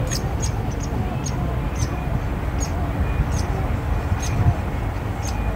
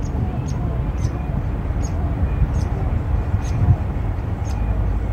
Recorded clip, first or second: first